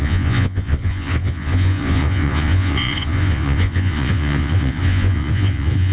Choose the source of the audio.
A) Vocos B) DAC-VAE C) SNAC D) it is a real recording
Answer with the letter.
A